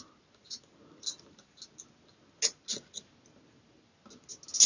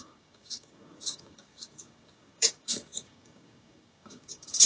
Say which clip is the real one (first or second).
first